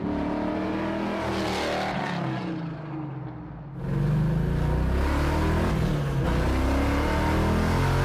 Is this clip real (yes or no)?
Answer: yes